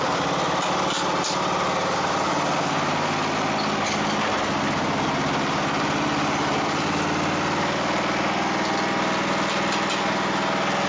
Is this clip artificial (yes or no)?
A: no